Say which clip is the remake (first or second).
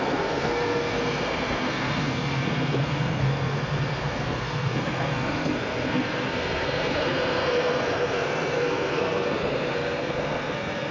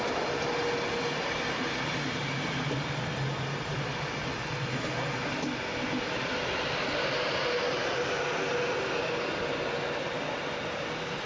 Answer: first